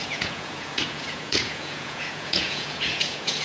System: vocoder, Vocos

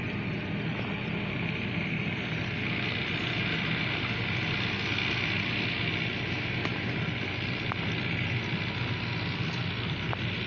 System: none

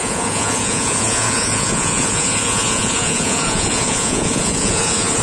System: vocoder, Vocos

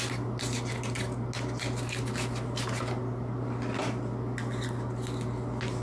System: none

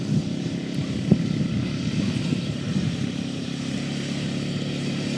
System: vocoder, BigVGAN v2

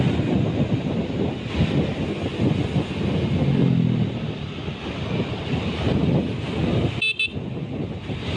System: none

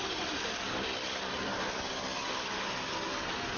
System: none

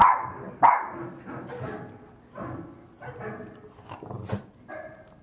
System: none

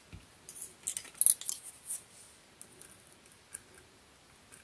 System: none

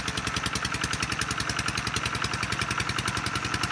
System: none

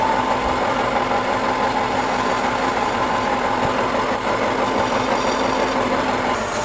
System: none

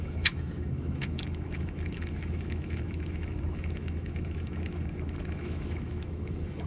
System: autoencoder, DAC-VAE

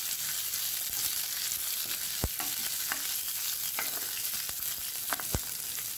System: none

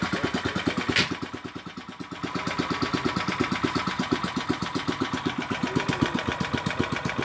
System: vocoder, BigVGAN v2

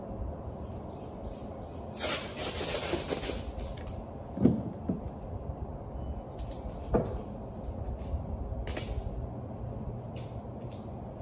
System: none